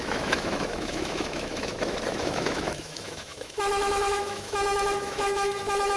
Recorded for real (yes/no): no